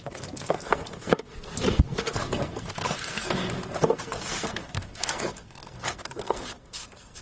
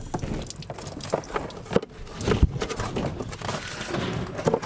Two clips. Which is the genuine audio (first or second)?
second